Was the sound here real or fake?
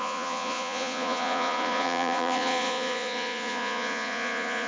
fake